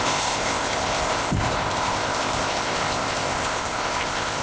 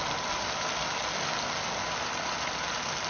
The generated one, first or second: first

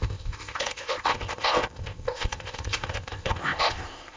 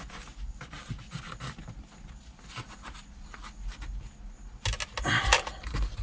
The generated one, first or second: first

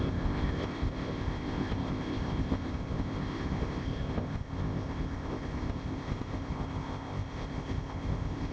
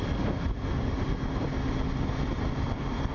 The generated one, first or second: first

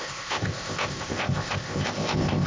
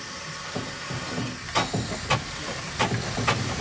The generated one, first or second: first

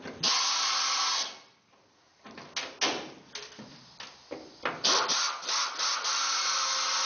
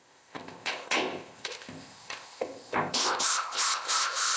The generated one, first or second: second